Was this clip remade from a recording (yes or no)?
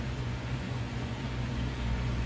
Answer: yes